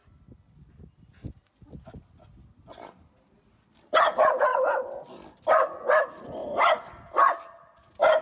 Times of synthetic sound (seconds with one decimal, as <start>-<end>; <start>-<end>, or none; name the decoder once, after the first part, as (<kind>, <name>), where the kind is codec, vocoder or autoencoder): 4.5-5.0 (vocoder, WaveNeXt)

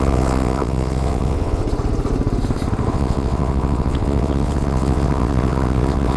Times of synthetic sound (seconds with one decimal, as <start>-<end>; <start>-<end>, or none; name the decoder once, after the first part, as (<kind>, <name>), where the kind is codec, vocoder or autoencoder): 0.0-1.6 (vocoder, WaveNeXt); 2.9-6.2

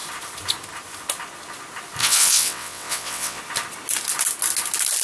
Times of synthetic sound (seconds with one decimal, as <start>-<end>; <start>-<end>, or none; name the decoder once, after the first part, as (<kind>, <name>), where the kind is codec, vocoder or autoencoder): 2.0-3.4 (vocoder, WaveNeXt)

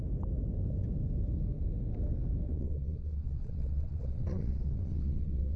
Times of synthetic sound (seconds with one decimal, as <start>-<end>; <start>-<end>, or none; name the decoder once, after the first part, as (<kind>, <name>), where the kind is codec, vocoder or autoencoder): 2.5-5.6 (vocoder, WaveNeXt)

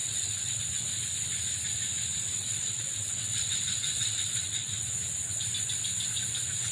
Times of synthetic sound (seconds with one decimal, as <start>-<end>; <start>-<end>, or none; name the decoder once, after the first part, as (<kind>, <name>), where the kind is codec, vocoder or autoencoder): 0.0-0.6 (vocoder, WaveNeXt); 2.3-4.8

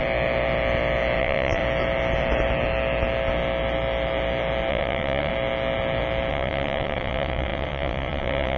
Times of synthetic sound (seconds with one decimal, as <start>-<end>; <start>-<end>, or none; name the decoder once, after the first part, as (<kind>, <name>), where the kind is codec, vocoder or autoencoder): 1.2-1.6 (vocoder, WaveNeXt); 4.7-5.3; 6.3-8.6

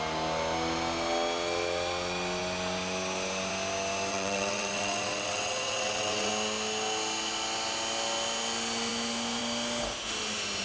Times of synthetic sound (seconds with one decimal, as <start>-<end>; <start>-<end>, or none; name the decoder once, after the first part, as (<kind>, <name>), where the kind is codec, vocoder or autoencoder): 4.1-6.3 (vocoder, WaveNeXt)

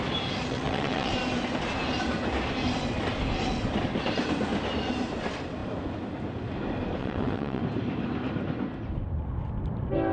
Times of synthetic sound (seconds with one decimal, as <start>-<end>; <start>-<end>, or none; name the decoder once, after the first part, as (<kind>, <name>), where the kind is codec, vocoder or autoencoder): 0.5-1.1 (vocoder, WaveNeXt); 7.0-7.6